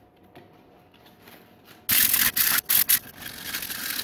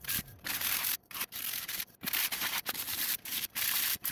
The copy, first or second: second